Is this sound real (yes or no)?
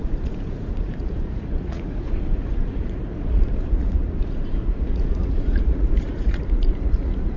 no